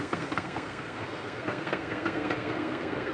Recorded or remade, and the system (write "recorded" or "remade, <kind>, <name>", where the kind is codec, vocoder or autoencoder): remade, codec, SNAC